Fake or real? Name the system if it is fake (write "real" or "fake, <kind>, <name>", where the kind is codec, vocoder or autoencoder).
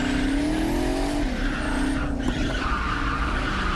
real